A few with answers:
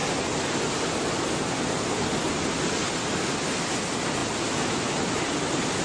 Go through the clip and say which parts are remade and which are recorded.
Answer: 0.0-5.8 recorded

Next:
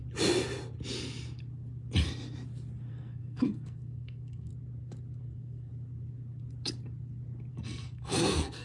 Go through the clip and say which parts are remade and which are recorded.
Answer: 0.0-2.9 recorded; 2.9-4.5 remade; 4.5-5.2 recorded; 5.2-5.7 remade; 5.7-7.5 recorded; 7.5-8.6 remade

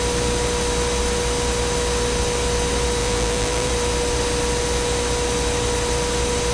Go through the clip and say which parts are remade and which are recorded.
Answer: 0.0-3.0 recorded; 3.0-3.7 remade; 3.7-6.5 recorded

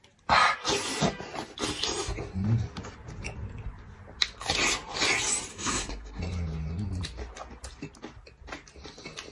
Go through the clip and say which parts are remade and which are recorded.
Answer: 0.0-5.5 recorded; 5.5-6.2 remade; 6.2-9.3 recorded

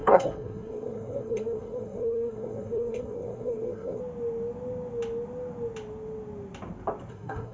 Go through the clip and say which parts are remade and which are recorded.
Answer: 0.0-4.0 remade; 4.0-7.1 recorded; 7.1-7.5 remade